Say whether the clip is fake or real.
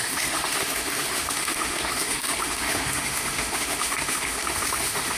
fake